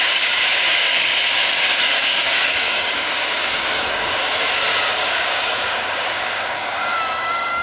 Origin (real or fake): fake